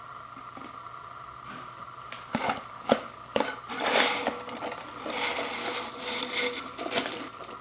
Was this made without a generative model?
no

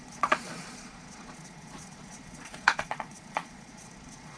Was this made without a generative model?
no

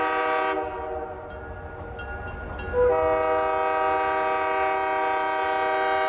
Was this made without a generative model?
yes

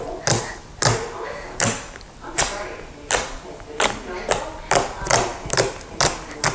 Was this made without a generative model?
yes